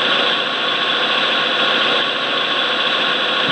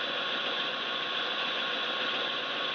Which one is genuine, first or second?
first